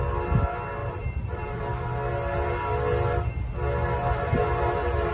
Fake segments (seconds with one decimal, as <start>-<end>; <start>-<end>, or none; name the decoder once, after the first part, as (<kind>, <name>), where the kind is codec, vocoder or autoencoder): 0.8-1.6 (vocoder, BigVGAN v2)